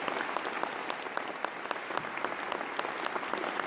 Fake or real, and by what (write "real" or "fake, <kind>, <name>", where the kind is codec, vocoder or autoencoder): real